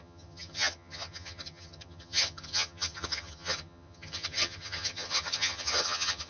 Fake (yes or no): yes